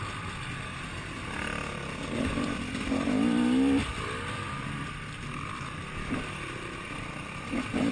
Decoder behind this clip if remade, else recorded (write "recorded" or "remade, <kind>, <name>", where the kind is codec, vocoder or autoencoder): recorded